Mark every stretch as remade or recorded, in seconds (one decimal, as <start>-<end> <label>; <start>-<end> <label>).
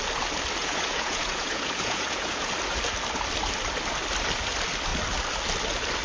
0.0-0.6 recorded; 0.6-2.5 remade; 2.5-6.0 recorded